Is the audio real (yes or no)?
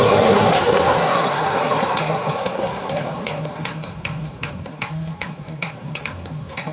no